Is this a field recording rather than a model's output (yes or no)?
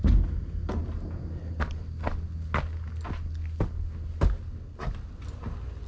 yes